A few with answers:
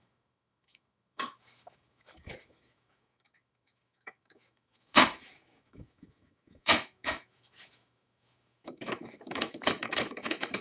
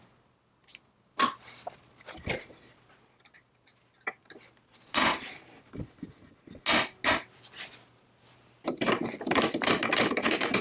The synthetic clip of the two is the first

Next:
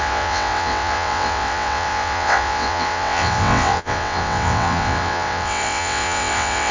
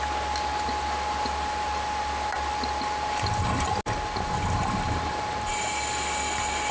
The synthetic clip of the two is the first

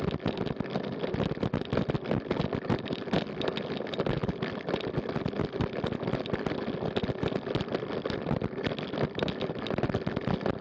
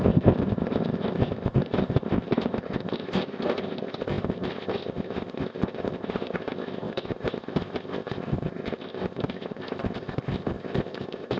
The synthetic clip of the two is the second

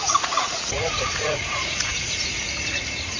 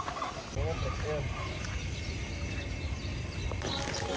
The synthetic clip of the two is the first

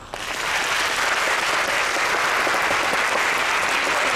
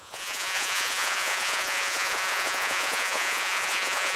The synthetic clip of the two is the second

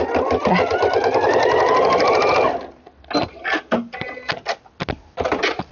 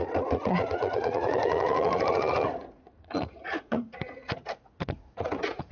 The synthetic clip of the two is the second